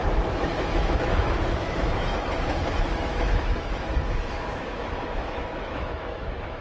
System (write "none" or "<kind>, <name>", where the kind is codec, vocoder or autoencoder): autoencoder, DAC-VAE